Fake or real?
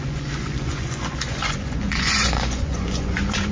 fake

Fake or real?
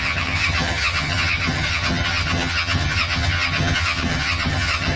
fake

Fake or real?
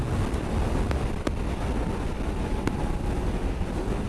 real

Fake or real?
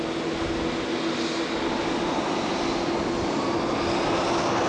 real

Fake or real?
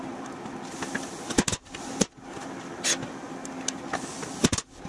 real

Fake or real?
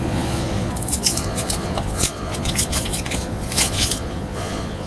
fake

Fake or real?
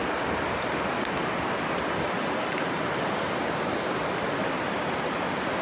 real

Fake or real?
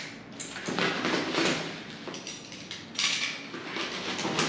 real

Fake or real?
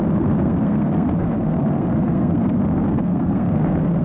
fake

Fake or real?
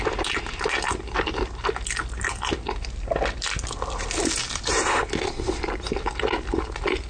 real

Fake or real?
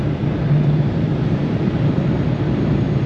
fake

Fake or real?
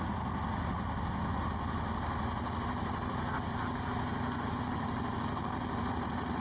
real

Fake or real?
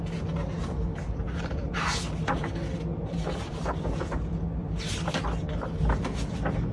real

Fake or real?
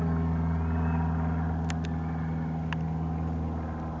real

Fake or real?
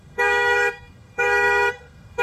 fake